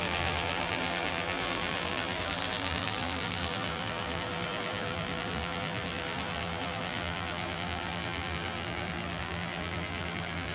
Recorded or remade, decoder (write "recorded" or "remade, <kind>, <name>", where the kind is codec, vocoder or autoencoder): remade, vocoder, BigVGAN v2